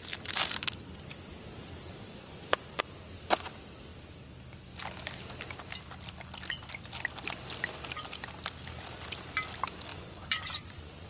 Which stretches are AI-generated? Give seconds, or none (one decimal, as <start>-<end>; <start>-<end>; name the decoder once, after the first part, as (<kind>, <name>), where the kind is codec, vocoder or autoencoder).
1.9-2.8 (vocoder, Vocos); 9.9-11.1